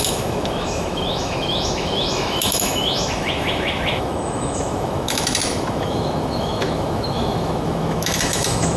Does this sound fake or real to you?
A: fake